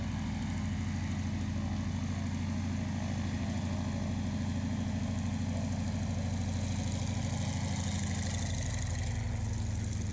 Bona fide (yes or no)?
yes